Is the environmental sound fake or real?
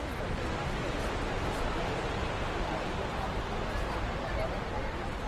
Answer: real